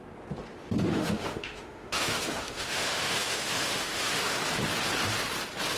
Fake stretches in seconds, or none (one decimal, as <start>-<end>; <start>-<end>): 0.9-4.4